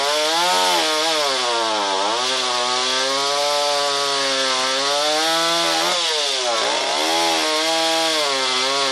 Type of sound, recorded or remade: recorded